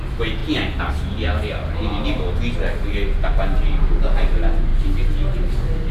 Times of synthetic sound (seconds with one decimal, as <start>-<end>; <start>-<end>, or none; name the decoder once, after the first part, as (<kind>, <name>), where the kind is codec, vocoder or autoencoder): none